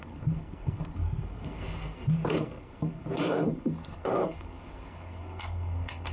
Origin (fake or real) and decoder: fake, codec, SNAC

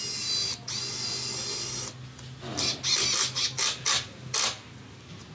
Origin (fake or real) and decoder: real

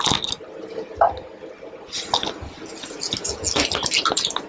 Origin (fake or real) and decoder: real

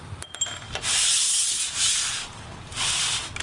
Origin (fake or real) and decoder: real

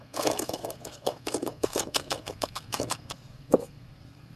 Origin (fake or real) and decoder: fake, codec, SNAC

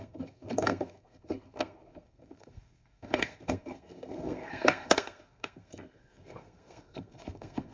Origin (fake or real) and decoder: fake, codec, SNAC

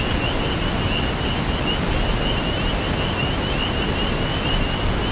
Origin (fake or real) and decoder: real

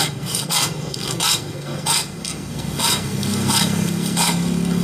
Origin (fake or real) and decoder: fake, codec, SNAC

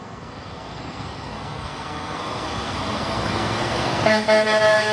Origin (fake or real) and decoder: fake, codec, SNAC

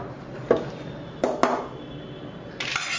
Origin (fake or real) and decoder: real